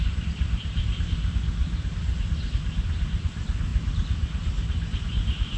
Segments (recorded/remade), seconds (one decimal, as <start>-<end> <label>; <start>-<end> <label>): 0.0-5.6 recorded